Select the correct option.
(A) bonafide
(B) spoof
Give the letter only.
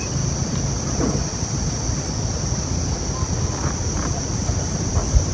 A